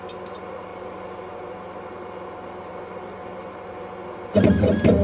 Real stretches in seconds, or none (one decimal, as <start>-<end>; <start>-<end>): 0.0-5.0